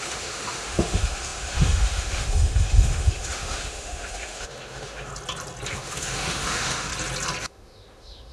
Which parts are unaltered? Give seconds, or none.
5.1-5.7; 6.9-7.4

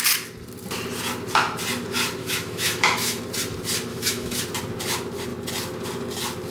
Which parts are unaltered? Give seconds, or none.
0.0-2.2; 3.2-3.9; 4.4-6.5

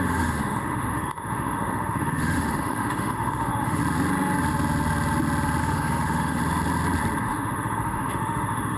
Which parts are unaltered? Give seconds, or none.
3.8-5.6; 6.4-7.2

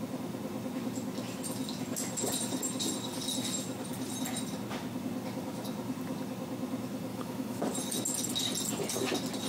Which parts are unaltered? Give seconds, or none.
0.0-7.1; 7.6-9.5

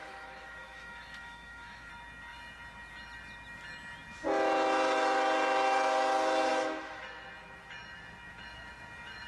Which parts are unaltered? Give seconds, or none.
1.9-6.5; 7.0-9.3

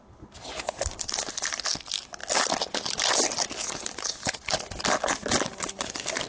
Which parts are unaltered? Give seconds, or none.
0.0-6.3